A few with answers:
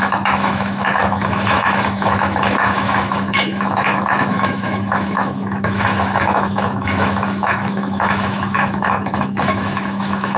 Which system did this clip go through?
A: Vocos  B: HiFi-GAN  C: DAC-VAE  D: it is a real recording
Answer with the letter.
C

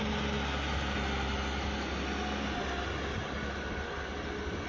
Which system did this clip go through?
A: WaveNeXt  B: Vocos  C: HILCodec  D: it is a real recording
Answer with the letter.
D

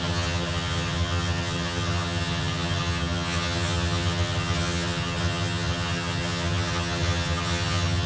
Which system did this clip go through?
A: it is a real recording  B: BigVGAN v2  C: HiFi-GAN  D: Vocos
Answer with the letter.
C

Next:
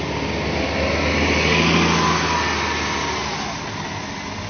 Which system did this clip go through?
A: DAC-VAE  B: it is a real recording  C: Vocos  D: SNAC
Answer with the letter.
B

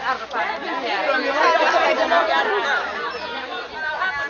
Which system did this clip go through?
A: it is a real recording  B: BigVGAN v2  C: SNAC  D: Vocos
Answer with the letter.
A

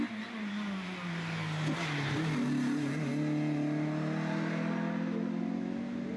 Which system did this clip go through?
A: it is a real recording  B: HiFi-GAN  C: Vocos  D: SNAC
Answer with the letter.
A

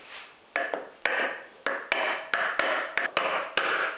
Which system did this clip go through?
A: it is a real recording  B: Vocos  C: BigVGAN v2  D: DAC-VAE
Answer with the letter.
A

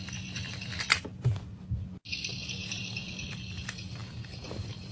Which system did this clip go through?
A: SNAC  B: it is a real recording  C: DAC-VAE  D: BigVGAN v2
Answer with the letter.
B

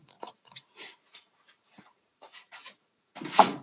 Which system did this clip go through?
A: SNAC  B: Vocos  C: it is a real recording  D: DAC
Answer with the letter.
B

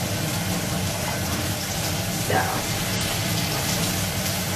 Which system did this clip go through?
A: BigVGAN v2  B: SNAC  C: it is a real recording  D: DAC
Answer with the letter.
C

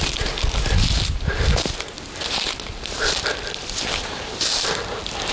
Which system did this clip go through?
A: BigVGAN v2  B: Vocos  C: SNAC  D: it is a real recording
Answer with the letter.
D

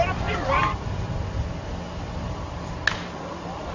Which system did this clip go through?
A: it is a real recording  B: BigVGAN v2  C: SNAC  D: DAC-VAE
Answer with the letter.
A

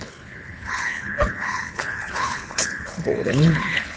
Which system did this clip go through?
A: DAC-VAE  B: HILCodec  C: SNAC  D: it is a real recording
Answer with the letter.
B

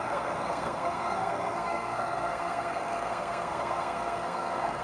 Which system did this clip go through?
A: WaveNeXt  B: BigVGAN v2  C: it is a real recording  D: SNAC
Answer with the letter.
D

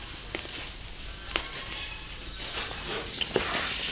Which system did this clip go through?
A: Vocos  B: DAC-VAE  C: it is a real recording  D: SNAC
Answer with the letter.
C